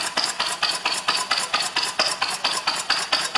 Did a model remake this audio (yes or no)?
no